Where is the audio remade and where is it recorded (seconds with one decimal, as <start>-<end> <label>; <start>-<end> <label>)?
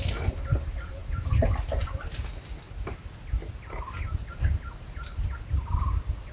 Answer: 0.0-6.3 recorded